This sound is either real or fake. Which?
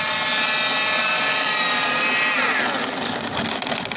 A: real